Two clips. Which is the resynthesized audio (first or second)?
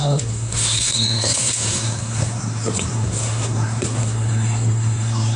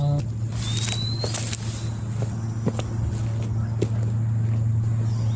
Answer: first